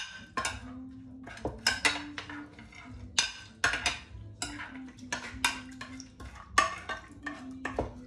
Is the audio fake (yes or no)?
no